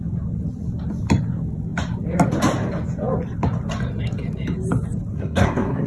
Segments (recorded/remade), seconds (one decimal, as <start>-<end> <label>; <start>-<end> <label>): 0.0-5.1 recorded; 5.1-5.9 remade